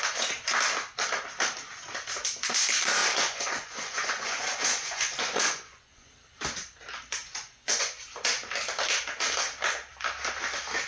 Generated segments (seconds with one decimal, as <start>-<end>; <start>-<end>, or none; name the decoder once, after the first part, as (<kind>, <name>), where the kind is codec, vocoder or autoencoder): 3.0-6.1 (vocoder, Vocos); 7.2-8.0